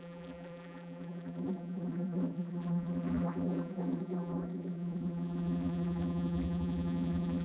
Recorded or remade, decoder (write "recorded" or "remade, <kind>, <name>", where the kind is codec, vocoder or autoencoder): remade, vocoder, BigVGAN v2